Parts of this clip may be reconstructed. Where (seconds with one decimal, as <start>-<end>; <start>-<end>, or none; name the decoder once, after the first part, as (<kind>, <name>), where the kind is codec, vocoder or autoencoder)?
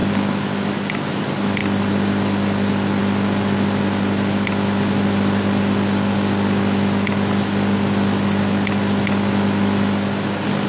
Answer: none